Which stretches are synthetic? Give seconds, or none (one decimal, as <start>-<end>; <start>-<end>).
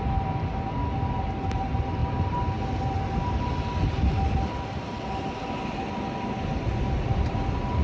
none